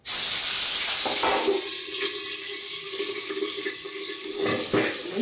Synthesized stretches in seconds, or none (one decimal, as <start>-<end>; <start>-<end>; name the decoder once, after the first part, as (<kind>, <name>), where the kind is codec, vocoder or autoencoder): 2.4-4.5 (codec, DAC)